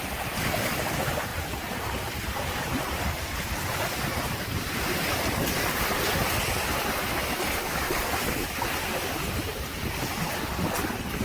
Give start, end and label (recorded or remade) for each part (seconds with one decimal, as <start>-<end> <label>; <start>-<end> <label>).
0.0-1.3 recorded; 1.3-3.2 remade; 3.2-11.2 recorded